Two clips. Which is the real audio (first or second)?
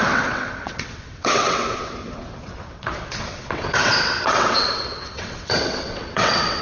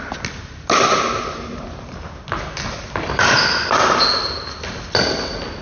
second